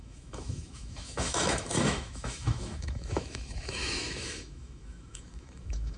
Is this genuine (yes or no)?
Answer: no